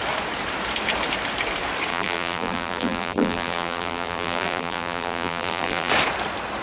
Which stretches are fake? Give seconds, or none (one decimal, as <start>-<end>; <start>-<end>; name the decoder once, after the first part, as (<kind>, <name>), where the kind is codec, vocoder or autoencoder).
1.9-5.9 (vocoder, BigVGAN v2)